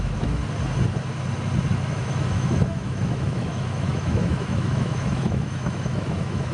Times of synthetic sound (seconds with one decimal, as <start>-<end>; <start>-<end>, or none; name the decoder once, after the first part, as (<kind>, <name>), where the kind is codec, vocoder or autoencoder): 0.0-0.4 (autoencoder, DAC-VAE); 1.7-6.5